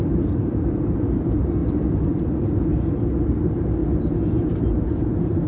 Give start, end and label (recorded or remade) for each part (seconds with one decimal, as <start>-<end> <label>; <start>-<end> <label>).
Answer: 0.0-1.6 remade; 1.6-2.1 recorded; 2.1-3.8 remade; 3.8-4.5 recorded; 4.5-5.5 remade